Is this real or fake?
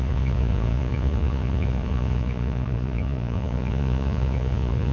fake